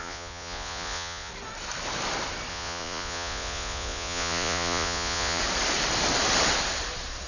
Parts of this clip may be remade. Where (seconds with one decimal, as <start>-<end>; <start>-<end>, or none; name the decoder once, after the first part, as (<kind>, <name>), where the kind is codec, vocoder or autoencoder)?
0.0-1.3 (vocoder, Vocos); 2.5-5.4